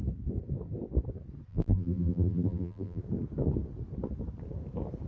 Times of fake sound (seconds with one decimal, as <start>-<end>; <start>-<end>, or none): 1.5-3.0